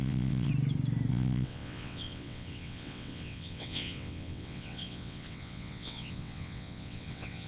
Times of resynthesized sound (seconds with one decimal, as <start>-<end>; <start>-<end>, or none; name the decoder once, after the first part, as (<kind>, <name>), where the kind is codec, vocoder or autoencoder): 0.0-0.5 (vocoder, WaveNeXt); 1.1-7.5